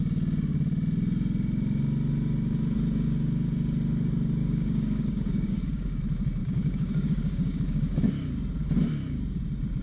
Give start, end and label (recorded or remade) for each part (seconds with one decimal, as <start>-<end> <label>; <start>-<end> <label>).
0.0-4.4 recorded; 4.4-6.0 remade; 6.0-6.4 recorded; 6.4-8.1 remade; 8.1-9.8 recorded